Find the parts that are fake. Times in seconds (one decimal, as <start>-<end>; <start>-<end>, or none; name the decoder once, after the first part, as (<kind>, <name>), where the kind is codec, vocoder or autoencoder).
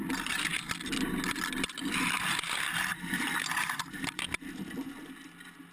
2.9-4.2 (vocoder, BigVGAN v2)